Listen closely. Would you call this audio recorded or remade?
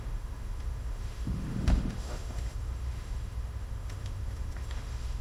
remade